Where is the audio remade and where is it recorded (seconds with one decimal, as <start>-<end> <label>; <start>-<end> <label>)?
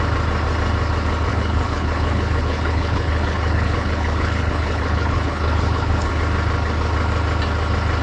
0.0-1.3 recorded; 1.3-6.1 remade; 6.1-8.0 recorded